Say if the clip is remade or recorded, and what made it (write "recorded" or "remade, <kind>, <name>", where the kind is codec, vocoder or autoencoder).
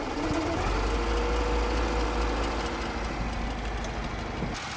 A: recorded